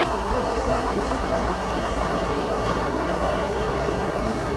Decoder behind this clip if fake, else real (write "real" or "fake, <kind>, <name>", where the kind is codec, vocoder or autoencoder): fake, codec, SNAC